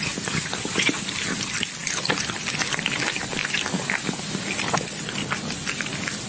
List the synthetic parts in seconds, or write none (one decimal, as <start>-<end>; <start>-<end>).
0.0-3.4; 4.3-6.3